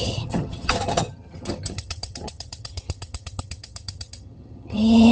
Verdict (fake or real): fake